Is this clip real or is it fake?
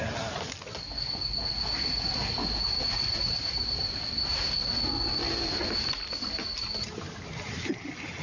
real